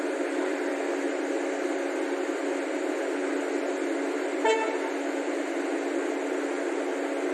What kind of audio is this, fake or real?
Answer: real